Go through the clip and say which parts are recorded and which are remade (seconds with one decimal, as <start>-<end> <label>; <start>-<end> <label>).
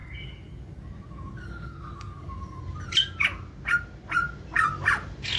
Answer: 0.0-2.6 remade; 2.6-5.4 recorded